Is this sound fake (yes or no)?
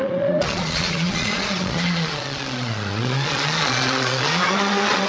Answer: yes